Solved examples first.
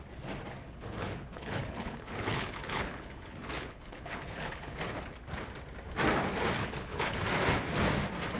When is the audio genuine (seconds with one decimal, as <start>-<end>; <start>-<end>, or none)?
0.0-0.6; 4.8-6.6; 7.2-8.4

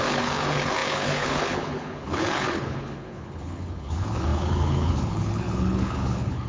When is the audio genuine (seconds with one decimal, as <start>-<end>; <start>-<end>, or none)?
none

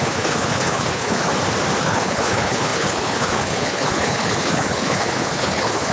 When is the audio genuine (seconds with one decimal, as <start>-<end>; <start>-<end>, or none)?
1.3-1.8

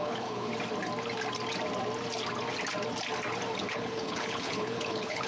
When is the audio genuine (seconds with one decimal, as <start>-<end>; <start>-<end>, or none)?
0.5-3.7

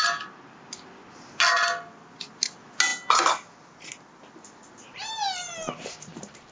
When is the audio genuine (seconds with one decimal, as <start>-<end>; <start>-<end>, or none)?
0.0-6.5

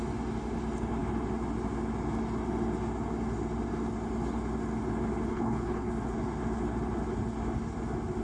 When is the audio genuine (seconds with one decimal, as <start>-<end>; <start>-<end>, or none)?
0.0-5.3; 5.9-8.2

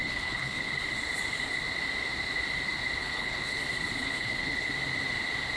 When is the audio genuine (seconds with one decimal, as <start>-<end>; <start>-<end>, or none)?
0.7-3.0; 3.6-4.0; 4.7-5.6

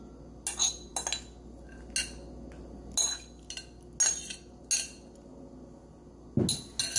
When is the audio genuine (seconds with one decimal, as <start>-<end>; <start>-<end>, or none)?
0.0-7.0